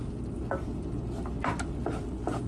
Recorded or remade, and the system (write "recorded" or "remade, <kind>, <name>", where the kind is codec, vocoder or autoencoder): recorded